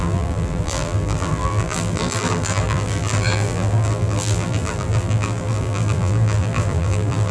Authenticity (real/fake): fake